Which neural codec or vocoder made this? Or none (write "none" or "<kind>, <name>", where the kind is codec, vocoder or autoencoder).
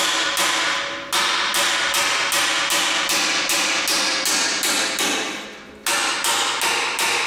none